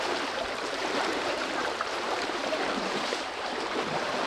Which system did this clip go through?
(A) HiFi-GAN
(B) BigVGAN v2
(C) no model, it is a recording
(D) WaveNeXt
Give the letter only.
B